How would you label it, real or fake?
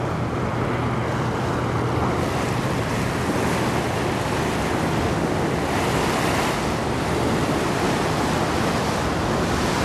real